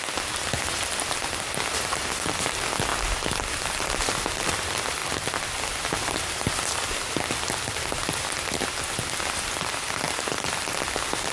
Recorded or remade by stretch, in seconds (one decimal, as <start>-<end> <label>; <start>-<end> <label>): 0.0-11.3 recorded